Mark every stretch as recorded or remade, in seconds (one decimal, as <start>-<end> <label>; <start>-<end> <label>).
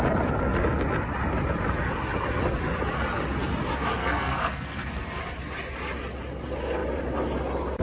0.0-4.0 recorded; 4.0-5.2 remade; 5.2-7.8 recorded